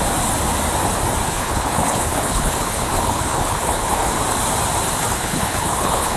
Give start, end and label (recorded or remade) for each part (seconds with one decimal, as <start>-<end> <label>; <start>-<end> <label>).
0.0-1.3 recorded; 1.3-4.1 remade; 4.1-5.0 recorded; 5.0-6.2 remade